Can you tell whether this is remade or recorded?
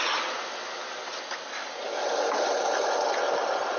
recorded